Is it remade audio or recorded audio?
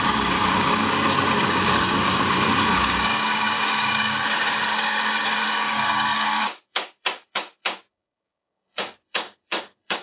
remade